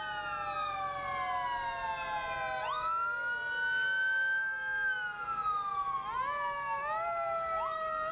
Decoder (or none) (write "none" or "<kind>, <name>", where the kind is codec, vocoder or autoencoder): none